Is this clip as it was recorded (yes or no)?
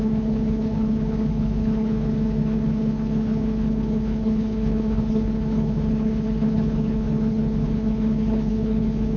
no